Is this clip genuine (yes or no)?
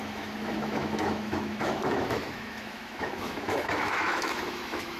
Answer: no